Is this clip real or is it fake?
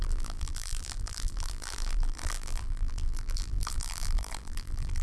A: fake